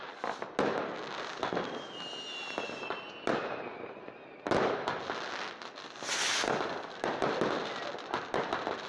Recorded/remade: recorded